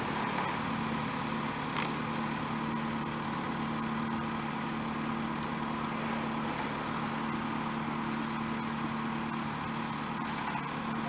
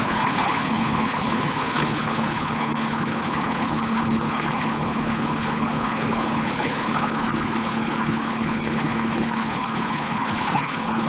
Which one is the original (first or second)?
first